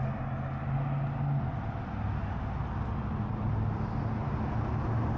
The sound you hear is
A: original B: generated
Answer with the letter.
A